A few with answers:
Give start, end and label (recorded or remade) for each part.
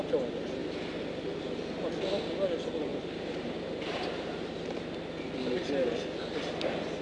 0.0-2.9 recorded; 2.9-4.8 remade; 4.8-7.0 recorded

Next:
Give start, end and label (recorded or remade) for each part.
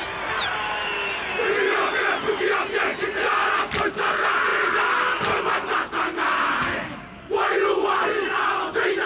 0.0-2.9 recorded; 2.9-4.0 remade; 4.0-4.5 recorded; 4.5-5.4 remade; 5.4-9.1 recorded